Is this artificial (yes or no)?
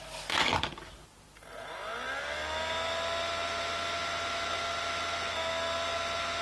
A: yes